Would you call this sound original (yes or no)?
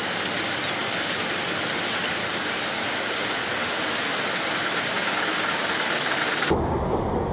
yes